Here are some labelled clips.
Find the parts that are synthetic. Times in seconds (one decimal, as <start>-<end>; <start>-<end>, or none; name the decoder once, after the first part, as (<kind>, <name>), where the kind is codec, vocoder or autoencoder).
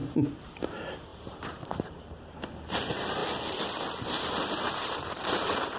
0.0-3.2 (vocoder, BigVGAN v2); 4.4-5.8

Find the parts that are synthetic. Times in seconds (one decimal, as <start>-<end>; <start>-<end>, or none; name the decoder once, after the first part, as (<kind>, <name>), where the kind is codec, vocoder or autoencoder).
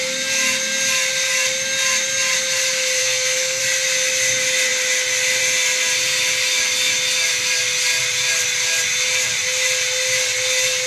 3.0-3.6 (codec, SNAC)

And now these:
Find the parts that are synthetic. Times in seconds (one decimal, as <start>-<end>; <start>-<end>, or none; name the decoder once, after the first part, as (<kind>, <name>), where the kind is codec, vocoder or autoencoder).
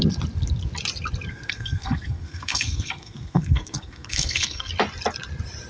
1.3-4.7 (codec, SNAC)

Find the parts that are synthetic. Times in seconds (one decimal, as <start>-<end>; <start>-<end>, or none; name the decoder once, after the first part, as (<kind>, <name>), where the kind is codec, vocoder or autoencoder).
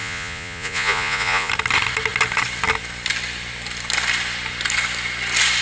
0.0-1.5 (vocoder, Vocos)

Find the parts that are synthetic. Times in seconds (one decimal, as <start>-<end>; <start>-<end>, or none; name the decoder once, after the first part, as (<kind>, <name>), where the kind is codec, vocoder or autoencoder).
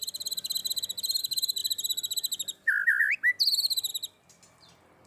none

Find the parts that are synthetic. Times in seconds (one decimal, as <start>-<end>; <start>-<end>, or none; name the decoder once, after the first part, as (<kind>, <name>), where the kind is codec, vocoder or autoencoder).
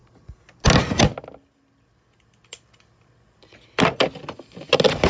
none